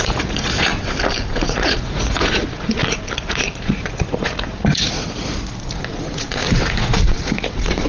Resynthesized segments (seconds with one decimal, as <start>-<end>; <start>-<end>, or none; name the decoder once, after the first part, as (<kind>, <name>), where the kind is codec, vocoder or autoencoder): 0.0-0.7 (vocoder, Vocos); 1.3-2.8; 3.3-7.9

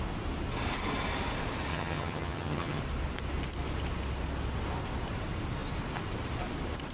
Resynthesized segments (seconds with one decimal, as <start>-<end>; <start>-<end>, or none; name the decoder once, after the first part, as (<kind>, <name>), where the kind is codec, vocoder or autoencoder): 1.7-2.8 (vocoder, HiFi-GAN)

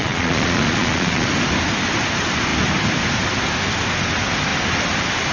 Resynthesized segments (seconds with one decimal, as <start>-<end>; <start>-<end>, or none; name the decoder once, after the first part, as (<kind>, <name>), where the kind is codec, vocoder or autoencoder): 0.0-1.3 (vocoder, Vocos)

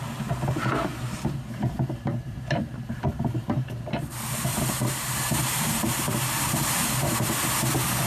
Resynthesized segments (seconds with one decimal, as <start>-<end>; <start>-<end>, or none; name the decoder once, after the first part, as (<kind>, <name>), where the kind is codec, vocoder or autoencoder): 0.9-3.9 (vocoder, BigVGAN v2); 4.5-7.3

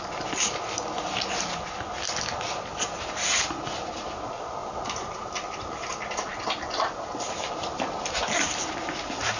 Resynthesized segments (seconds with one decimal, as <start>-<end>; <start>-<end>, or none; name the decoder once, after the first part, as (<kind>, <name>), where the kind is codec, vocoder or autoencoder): none